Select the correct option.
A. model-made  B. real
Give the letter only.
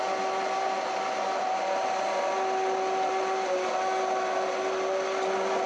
B